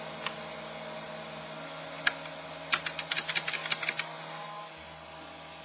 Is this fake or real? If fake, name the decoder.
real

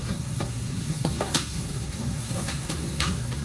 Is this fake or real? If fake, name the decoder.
fake, codec, SNAC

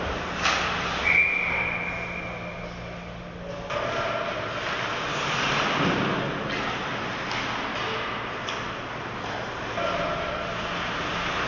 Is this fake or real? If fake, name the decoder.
real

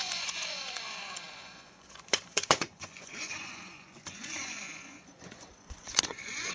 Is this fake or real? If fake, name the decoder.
fake, vocoder, Vocos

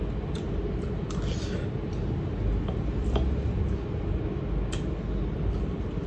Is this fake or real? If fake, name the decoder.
real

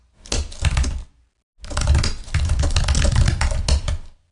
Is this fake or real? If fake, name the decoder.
real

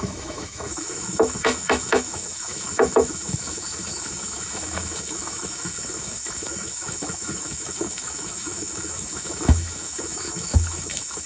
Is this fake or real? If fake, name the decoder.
fake, autoencoder, DAC-VAE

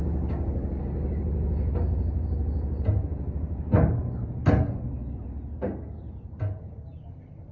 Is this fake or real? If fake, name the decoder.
real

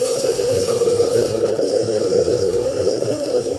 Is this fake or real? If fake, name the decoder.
fake, codec, SNAC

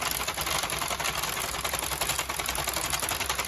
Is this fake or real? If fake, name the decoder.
real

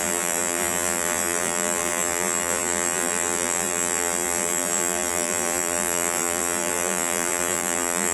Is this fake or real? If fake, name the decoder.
fake, vocoder, BigVGAN v2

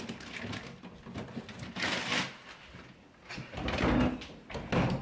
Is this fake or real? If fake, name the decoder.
real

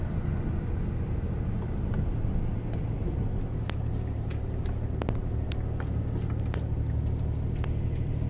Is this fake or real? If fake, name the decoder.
real